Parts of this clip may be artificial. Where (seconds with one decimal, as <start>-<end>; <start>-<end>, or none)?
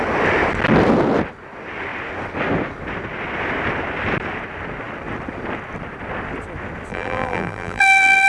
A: 6.9-8.3